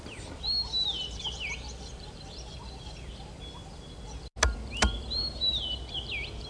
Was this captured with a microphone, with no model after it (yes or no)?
yes